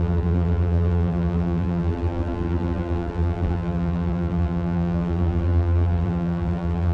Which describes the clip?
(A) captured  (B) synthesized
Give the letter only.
B